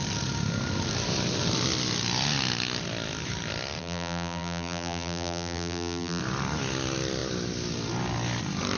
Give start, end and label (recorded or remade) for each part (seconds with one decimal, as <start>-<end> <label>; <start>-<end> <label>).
0.0-3.8 recorded; 3.8-6.2 remade; 6.2-8.8 recorded